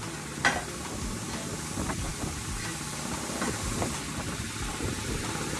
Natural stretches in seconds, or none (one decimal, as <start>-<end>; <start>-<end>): 0.0-5.6